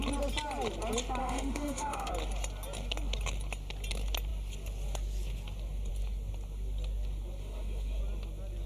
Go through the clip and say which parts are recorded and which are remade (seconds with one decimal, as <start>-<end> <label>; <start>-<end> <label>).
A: 0.0-1.2 recorded; 1.2-2.1 remade; 2.1-7.4 recorded; 7.4-8.0 remade; 8.0-8.7 recorded